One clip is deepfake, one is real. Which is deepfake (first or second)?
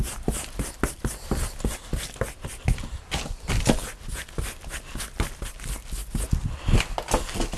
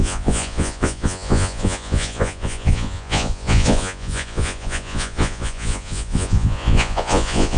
second